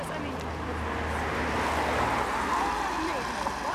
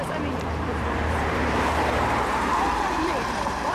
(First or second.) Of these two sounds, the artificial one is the second